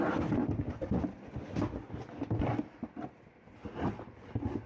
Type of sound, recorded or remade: recorded